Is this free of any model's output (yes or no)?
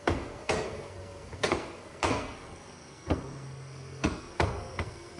no